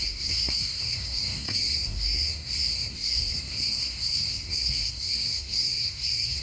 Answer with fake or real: fake